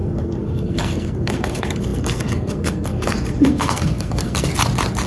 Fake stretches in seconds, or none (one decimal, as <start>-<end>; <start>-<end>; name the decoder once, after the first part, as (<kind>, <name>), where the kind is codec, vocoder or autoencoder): 0.0-4.5 (codec, SNAC)